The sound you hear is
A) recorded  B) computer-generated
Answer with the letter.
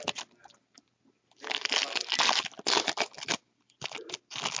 A